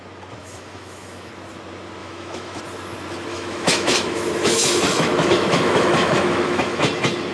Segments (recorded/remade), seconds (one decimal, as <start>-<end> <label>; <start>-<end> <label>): 0.0-0.4 recorded; 0.4-1.3 remade; 1.3-2.0 recorded; 2.0-2.6 remade; 2.6-3.3 recorded; 3.3-6.8 remade; 6.8-7.3 recorded